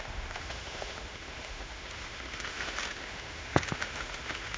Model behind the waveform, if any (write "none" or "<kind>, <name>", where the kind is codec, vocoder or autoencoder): autoencoder, DAC-VAE